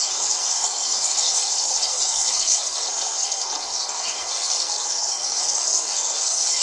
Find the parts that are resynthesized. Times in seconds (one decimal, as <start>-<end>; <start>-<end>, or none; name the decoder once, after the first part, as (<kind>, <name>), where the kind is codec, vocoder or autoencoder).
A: 0.0-6.6 (codec, SNAC)